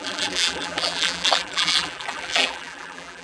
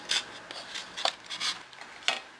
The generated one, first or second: first